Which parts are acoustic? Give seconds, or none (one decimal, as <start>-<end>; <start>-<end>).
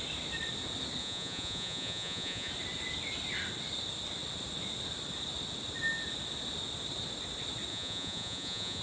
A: 0.0-1.0; 2.5-7.7